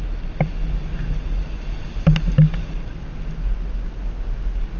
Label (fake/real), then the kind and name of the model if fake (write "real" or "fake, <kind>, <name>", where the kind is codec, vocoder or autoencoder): real